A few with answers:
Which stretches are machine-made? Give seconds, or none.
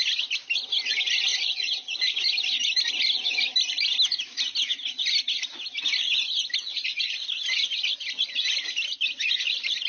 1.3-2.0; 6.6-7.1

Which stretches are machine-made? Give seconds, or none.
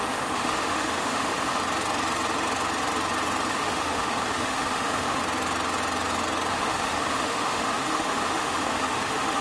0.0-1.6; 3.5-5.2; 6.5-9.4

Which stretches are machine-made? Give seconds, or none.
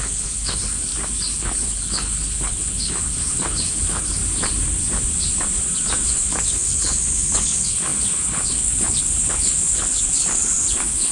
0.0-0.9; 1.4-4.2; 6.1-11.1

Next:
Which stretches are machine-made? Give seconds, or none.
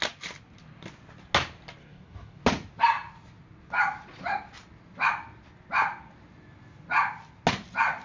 1.8-2.4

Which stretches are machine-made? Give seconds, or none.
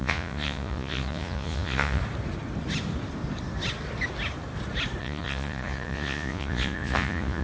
0.0-2.0; 5.0-7.4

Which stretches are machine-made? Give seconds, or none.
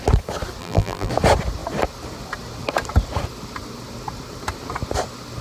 0.6-1.1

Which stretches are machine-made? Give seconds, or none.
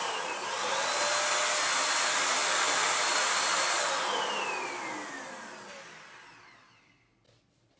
none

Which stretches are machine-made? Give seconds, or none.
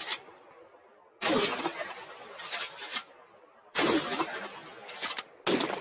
0.0-1.0; 1.6-4.6